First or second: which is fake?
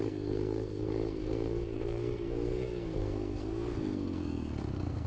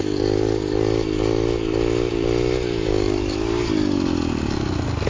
first